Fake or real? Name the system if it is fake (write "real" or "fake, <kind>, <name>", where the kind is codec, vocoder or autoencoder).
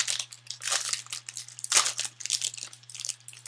real